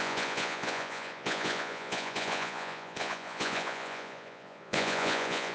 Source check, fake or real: fake